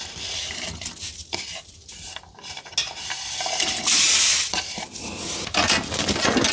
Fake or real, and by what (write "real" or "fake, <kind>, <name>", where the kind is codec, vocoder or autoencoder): real